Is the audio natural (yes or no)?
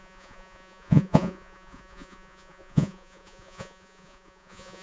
no